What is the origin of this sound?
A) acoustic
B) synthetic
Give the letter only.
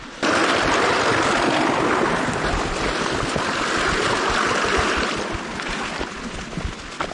A